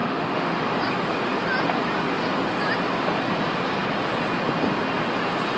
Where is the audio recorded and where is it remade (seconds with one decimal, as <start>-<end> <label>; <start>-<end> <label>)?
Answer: 0.0-0.6 remade; 0.6-5.6 recorded